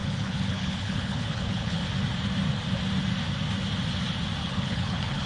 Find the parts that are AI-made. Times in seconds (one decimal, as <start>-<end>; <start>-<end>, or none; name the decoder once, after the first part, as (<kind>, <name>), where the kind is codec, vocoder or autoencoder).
0.0-1.8 (codec, HILCodec); 4.4-5.3